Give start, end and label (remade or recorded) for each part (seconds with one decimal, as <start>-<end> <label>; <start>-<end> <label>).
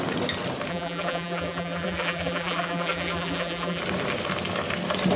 0.0-0.7 recorded; 0.7-3.8 remade; 3.8-5.2 recorded